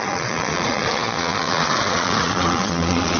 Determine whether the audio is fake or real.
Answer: fake